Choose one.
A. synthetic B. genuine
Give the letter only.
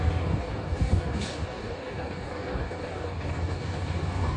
A